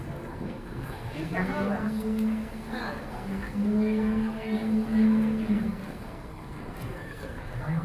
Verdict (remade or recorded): remade